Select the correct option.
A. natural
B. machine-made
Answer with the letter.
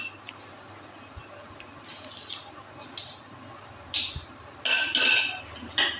A